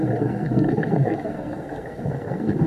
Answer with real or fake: fake